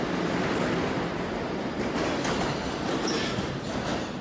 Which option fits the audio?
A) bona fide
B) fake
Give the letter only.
A